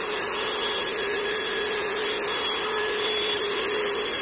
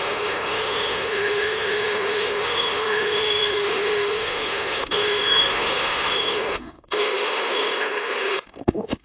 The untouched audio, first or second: first